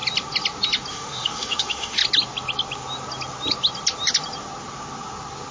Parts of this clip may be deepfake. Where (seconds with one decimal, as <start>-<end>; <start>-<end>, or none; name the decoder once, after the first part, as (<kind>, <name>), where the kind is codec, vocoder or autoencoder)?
0.9-2.0 (autoencoder, DAC-VAE)

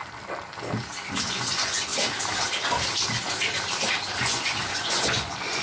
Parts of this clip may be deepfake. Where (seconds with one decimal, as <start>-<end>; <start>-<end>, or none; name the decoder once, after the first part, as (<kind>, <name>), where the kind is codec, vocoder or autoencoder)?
1.3-1.9 (vocoder, Vocos); 4.2-5.6